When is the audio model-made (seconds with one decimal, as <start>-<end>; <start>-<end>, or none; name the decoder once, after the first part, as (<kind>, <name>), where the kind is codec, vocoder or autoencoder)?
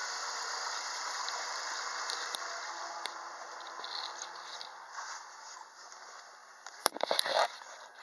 0.0-1.6 (vocoder, BigVGAN v2); 6.4-8.0